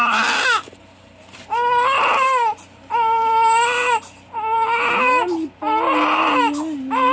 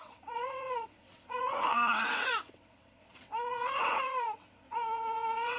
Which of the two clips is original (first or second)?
first